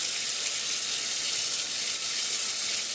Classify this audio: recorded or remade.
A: recorded